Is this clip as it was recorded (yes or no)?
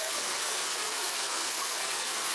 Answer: no